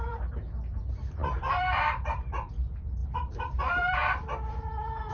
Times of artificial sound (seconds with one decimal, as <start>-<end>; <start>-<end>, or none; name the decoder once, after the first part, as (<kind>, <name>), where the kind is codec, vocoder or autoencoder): 0.0-4.0 (vocoder, BigVGAN v2)